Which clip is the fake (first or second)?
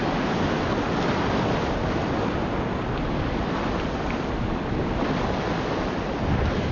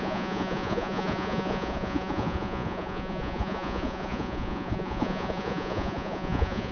second